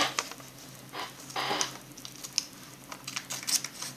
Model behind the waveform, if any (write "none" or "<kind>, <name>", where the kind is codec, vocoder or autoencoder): none